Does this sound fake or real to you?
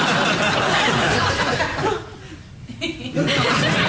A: real